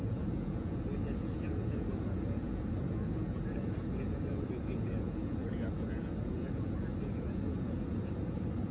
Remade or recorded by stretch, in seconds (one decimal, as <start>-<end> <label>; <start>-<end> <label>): 0.0-8.7 remade